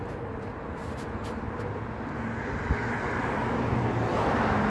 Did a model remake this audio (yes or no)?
no